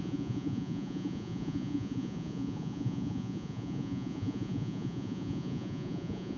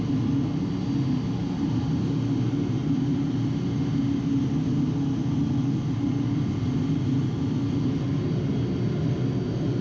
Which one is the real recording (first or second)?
second